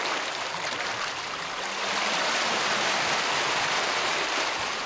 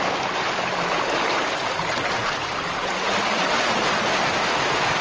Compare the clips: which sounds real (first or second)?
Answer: first